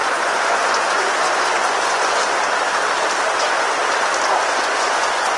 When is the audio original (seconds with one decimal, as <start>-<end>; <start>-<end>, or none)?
2.2-3.3; 3.8-4.4